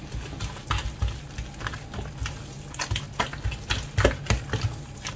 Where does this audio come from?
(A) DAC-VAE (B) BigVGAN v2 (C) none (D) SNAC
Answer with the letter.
C